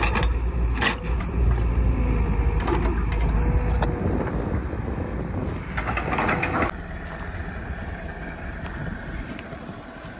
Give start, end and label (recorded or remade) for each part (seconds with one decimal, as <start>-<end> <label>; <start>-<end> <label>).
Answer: 0.0-10.2 recorded